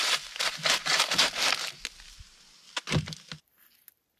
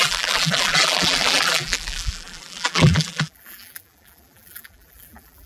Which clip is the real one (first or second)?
first